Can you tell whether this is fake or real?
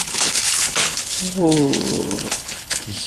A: fake